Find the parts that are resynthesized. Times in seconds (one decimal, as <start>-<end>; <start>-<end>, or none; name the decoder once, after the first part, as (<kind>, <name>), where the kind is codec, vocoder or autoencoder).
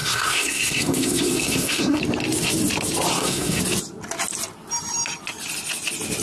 0.0-2.0 (codec, SNAC); 3.1-3.6